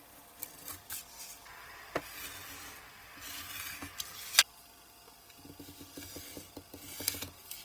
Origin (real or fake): real